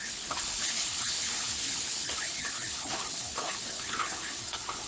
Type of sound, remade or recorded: remade